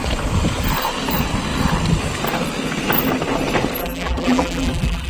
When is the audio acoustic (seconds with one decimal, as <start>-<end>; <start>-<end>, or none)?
0.0-3.8